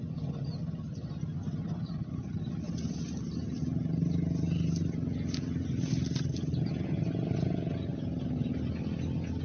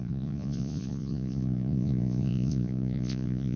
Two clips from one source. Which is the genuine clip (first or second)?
first